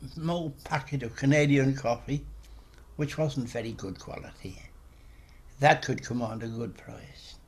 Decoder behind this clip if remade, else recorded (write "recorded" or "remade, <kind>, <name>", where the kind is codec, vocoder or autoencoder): recorded